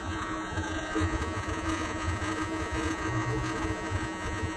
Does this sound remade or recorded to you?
remade